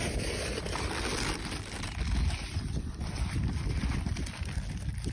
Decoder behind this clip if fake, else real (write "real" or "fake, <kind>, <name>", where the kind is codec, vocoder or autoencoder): real